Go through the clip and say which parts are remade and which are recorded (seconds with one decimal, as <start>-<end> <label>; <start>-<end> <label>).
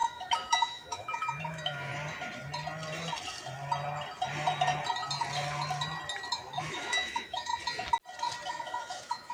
0.0-1.9 remade; 1.9-6.6 recorded; 6.6-7.5 remade; 7.5-8.5 recorded; 8.5-9.3 remade